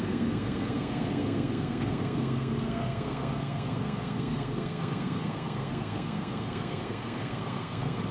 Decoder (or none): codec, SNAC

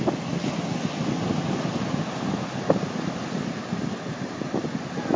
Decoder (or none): none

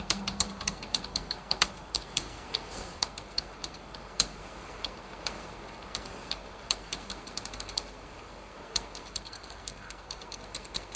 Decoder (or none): codec, SNAC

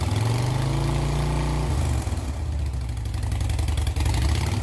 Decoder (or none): none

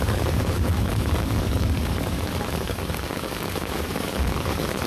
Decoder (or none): codec, DAC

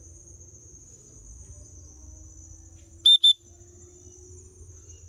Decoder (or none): none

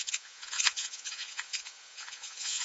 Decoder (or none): vocoder, Vocos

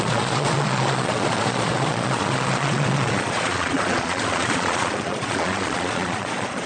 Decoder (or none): vocoder, Vocos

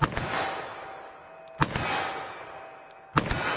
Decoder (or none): none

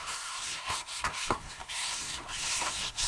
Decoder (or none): codec, SNAC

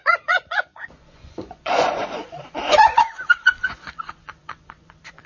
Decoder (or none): vocoder, Vocos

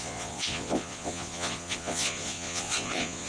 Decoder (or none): vocoder, Vocos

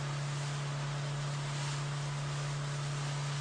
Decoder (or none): none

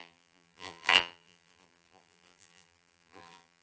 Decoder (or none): vocoder, BigVGAN v2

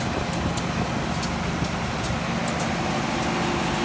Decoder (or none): none